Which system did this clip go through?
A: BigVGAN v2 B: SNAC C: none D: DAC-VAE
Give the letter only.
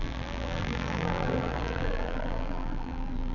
A